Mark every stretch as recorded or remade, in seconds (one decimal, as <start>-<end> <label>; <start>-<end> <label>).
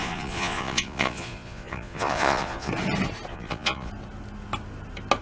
0.0-2.7 remade; 2.7-3.3 recorded; 3.3-3.9 remade; 3.9-5.2 recorded